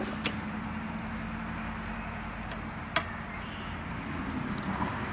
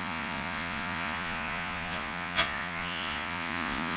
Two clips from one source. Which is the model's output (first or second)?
second